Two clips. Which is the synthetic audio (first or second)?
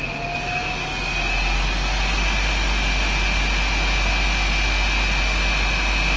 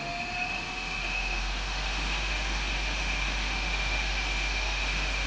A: second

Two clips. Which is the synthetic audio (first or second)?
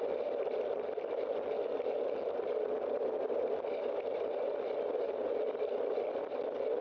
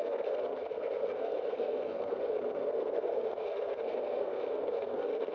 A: second